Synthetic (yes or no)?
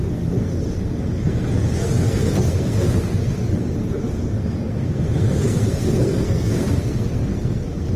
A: yes